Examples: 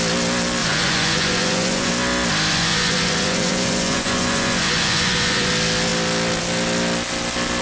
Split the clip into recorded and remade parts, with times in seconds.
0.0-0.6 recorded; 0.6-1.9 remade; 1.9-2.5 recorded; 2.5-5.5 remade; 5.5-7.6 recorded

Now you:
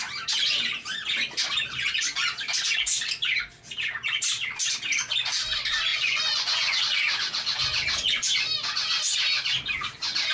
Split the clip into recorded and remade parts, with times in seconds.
0.0-5.9 recorded; 5.9-6.8 remade; 6.8-10.3 recorded

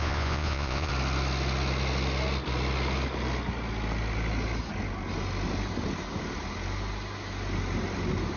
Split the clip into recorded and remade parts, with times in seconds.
0.0-0.9 remade; 0.9-8.4 recorded

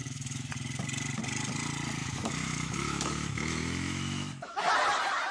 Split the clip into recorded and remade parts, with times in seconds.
0.0-0.5 remade; 0.5-2.0 recorded; 2.0-4.6 remade; 4.6-5.3 recorded

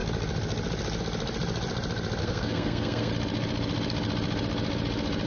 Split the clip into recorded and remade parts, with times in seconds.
0.0-2.2 recorded; 2.2-3.1 remade; 3.1-5.3 recorded